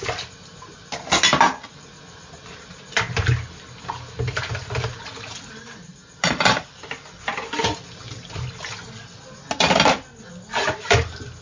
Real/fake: real